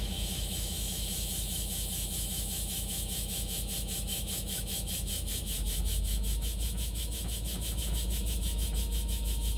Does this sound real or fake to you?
fake